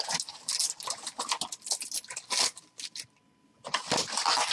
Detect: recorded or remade recorded